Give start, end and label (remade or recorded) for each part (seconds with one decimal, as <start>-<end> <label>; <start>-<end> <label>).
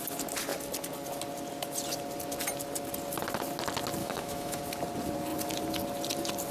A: 0.0-4.0 recorded; 4.0-4.6 remade; 4.6-6.5 recorded